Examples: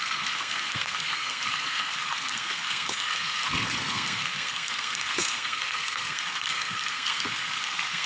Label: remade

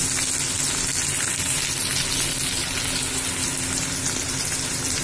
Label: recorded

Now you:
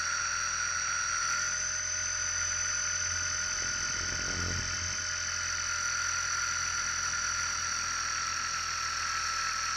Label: recorded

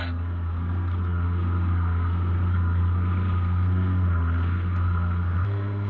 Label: remade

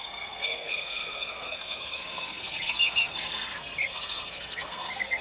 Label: remade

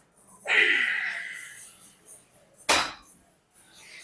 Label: recorded